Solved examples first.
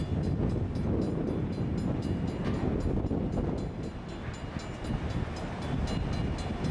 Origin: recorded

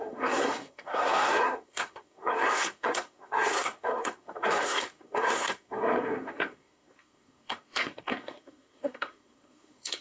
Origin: remade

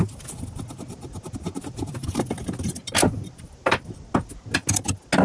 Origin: recorded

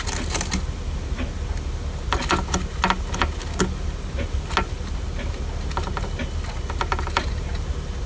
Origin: recorded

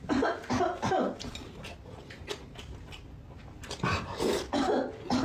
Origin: recorded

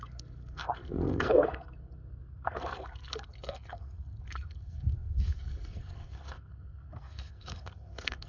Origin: remade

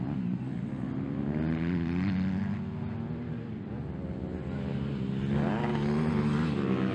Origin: recorded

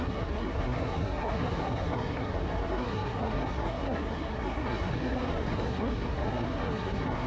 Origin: remade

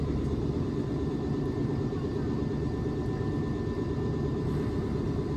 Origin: recorded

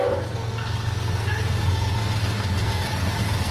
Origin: remade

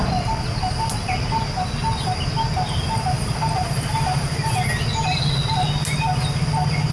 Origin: recorded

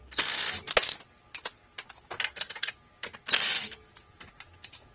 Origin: recorded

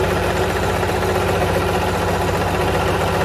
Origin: recorded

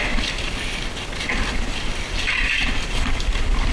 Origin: recorded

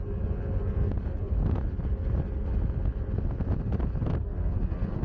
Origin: recorded